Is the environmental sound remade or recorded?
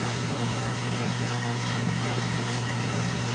remade